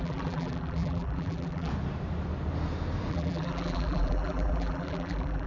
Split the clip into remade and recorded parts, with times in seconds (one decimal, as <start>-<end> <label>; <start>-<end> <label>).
0.0-1.7 remade; 1.7-3.1 recorded; 3.1-5.5 remade